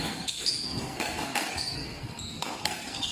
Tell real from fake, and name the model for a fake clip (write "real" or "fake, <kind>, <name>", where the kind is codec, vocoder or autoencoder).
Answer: fake, codec, SNAC